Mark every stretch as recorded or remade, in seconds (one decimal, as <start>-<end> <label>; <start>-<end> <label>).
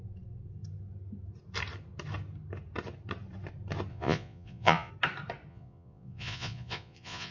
0.0-3.9 recorded; 3.9-4.9 remade; 4.9-5.5 recorded; 5.5-7.3 remade